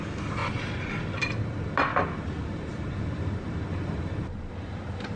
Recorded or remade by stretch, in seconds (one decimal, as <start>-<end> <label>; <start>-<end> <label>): 0.0-1.9 recorded; 1.9-5.2 remade